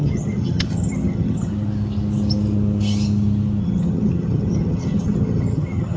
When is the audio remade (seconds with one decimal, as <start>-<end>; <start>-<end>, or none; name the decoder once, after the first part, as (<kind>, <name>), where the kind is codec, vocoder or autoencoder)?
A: 0.0-1.5 (vocoder, HiFi-GAN); 3.6-6.0